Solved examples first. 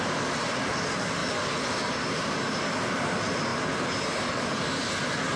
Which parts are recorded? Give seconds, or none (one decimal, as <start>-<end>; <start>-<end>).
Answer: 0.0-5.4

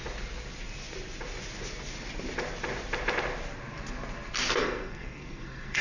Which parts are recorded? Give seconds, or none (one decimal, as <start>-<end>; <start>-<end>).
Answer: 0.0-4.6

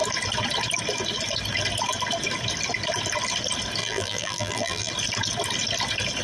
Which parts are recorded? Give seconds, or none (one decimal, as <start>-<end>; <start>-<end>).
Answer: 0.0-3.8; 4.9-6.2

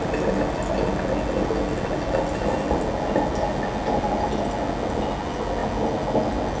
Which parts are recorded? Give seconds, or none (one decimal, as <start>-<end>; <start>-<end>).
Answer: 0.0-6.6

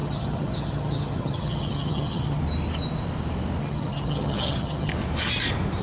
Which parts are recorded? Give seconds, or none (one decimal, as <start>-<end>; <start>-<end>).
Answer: 2.4-3.6; 4.9-5.8